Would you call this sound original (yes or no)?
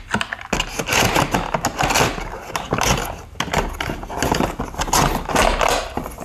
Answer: yes